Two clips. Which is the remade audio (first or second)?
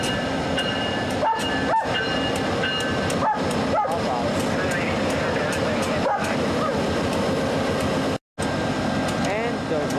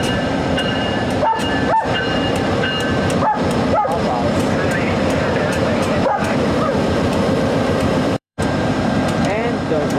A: second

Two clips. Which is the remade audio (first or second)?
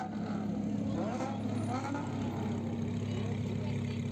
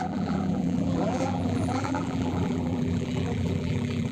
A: second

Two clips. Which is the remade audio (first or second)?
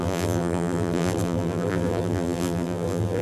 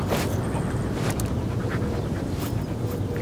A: first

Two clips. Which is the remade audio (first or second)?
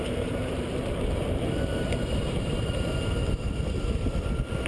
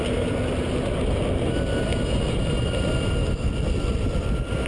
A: first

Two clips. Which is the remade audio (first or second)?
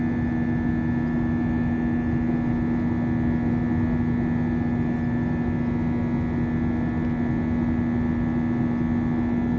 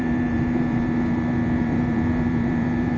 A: second